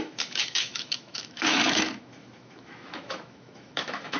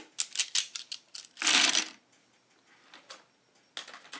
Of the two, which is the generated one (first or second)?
first